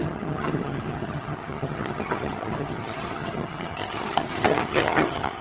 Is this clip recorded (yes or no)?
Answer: no